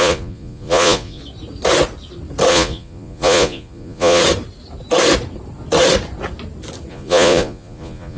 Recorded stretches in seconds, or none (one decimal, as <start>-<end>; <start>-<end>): 1.2-2.5; 4.2-6.9